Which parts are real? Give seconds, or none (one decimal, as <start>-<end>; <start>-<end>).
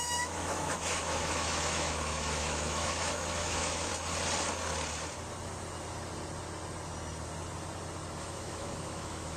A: 3.9-8.2